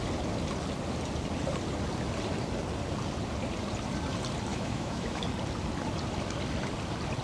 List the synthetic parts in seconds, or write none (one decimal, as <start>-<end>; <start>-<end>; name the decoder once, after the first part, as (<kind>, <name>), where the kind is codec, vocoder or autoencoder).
4.5-5.2 (autoencoder, DAC-VAE)